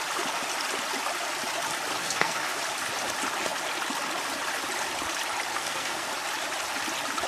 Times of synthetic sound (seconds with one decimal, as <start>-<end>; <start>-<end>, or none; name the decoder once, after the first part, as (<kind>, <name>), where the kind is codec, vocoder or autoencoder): 2.0-2.6 (codec, SNAC); 5.5-6.1